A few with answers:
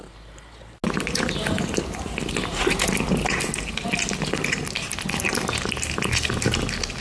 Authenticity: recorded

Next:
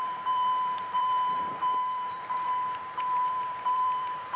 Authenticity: remade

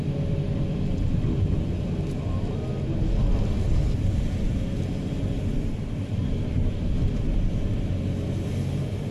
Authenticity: remade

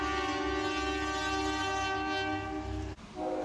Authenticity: recorded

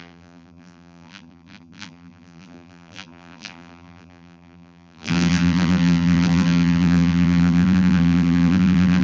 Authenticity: remade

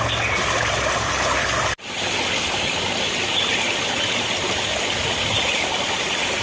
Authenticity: recorded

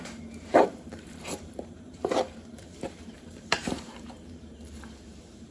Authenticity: remade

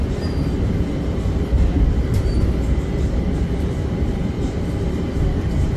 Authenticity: remade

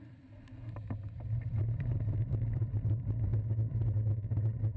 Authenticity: remade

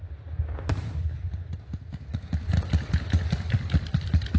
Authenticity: recorded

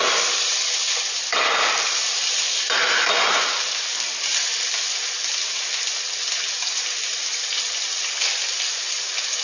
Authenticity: recorded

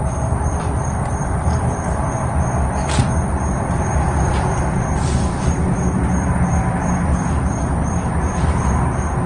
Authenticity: remade